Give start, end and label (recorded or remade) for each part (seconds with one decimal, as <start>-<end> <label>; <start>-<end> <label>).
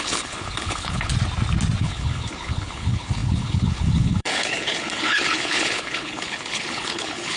0.0-1.1 remade; 1.1-1.8 recorded; 1.8-7.4 remade